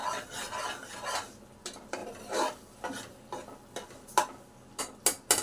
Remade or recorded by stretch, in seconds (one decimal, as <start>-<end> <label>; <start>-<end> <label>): 0.0-5.4 recorded